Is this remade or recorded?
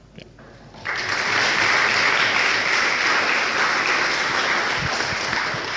recorded